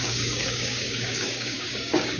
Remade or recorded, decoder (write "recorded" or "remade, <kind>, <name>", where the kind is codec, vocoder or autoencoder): remade, codec, DAC